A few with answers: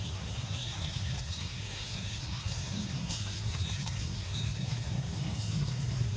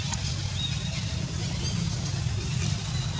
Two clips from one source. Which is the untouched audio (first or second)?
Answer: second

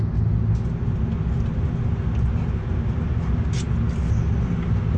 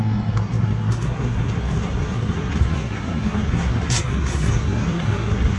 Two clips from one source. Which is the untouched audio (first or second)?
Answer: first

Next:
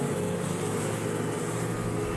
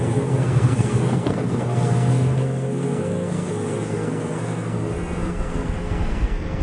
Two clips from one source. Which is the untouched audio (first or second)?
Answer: first